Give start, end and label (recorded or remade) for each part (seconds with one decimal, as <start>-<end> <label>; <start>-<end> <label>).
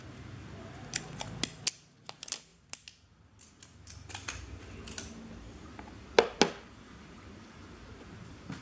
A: 0.0-8.6 recorded